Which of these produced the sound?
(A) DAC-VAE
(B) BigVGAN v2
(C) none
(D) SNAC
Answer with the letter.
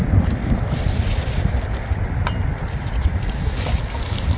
B